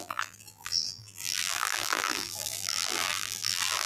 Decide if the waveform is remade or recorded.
remade